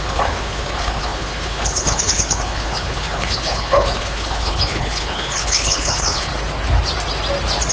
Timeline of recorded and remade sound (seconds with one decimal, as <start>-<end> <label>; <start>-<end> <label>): 0.0-6.3 remade; 6.3-7.7 recorded